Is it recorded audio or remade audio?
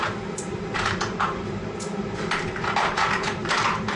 remade